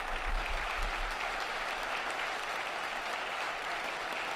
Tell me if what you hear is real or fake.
real